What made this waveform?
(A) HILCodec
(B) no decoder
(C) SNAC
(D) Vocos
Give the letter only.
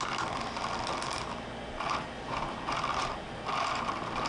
B